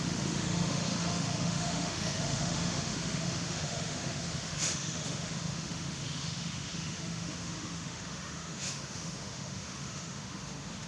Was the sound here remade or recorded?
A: remade